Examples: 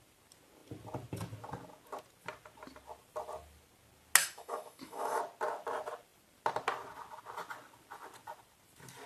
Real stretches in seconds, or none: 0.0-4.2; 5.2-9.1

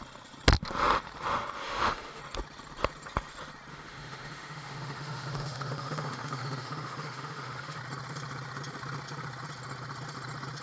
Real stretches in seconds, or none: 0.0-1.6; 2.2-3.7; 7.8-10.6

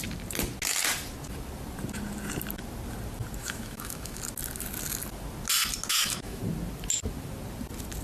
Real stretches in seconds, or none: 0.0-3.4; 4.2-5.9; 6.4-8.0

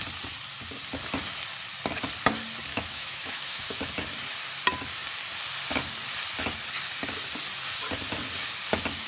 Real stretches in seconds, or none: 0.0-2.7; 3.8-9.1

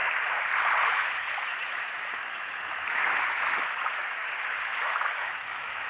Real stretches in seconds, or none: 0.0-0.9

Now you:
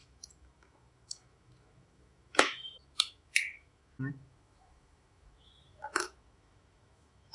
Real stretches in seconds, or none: none

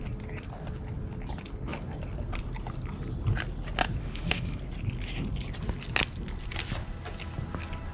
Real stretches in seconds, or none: 0.0-4.0; 4.6-7.9